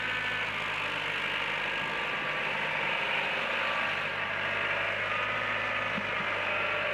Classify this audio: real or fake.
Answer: real